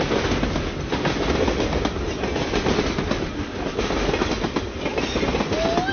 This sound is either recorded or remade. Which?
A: recorded